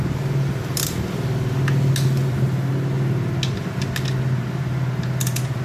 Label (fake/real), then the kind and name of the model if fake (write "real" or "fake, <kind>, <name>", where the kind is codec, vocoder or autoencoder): real